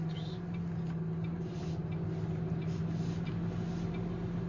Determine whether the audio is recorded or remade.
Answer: recorded